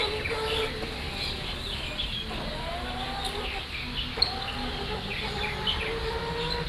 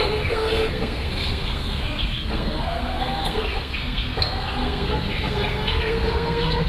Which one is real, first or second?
first